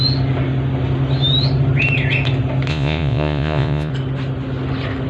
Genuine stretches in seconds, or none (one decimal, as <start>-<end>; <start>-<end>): 0.0-2.7; 3.9-5.1